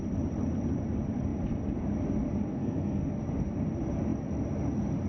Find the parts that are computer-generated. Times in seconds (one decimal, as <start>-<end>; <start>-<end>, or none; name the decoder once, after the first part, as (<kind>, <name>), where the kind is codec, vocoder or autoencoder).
2.5-3.1 (codec, SNAC)